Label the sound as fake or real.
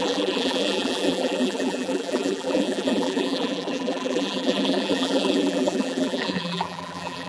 fake